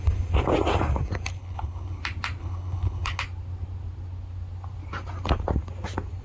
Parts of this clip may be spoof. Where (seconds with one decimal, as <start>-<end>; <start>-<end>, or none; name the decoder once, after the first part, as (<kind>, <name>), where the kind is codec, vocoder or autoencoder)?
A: 1.4-2.0 (codec, HILCodec); 2.4-3.2